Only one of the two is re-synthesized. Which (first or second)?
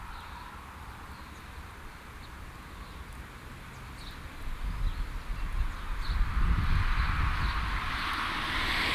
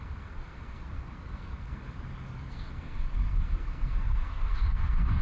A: second